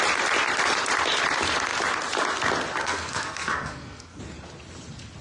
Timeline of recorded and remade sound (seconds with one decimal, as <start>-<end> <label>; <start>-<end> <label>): 0.0-2.8 recorded; 2.8-4.2 remade; 4.2-5.2 recorded